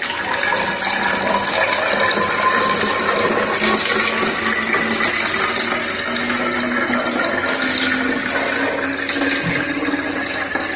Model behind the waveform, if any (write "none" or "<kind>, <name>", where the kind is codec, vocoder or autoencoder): none